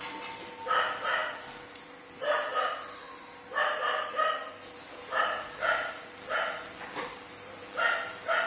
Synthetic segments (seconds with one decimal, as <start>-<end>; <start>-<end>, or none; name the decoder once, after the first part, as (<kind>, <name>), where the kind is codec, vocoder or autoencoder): none